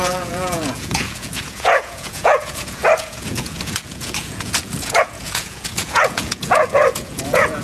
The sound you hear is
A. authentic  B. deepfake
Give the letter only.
B